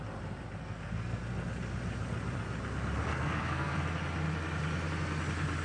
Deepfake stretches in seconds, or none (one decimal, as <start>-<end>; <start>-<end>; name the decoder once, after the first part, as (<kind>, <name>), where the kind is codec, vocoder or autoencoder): 0.6-1.2 (codec, SNAC); 3.1-3.8